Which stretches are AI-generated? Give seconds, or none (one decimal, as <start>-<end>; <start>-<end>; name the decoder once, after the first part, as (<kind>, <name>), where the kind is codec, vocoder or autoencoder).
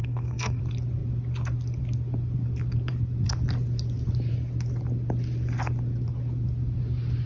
0.0-0.6 (codec, SNAC)